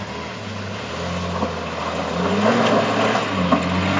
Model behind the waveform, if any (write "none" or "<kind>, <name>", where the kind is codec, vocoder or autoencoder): none